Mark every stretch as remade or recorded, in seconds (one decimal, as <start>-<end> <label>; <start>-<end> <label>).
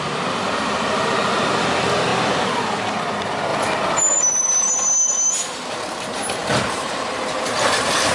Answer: 0.0-8.1 recorded